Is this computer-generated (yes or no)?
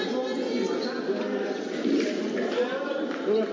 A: no